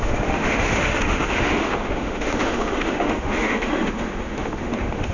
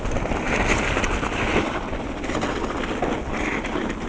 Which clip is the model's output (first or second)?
first